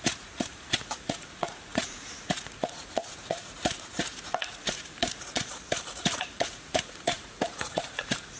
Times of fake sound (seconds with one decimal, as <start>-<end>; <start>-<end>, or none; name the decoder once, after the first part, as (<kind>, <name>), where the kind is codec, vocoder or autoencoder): 0.0-5.5 (vocoder, Vocos); 6.0-8.4